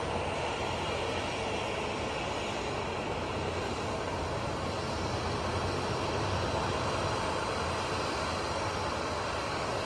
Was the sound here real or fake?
real